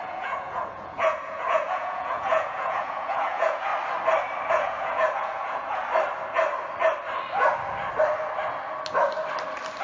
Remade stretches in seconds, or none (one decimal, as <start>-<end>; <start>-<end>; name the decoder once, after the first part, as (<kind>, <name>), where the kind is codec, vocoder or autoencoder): 0.0-3.7 (vocoder, Vocos); 4.5-5.8